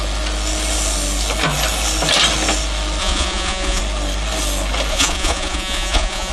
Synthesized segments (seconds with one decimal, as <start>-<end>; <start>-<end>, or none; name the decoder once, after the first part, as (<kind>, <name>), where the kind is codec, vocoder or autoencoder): 3.0-3.8 (vocoder, Vocos); 4.9-6.3